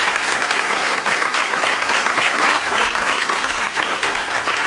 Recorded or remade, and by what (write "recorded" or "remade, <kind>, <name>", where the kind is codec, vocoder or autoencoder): remade, codec, SNAC